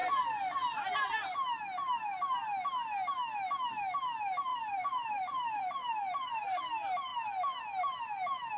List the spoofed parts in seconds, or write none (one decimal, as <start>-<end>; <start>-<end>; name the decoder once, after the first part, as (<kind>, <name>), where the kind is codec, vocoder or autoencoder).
4.5-6.6 (vocoder, BigVGAN v2)